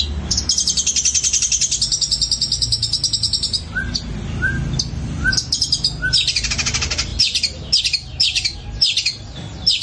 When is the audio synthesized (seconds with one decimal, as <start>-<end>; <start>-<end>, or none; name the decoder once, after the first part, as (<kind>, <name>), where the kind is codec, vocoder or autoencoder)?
none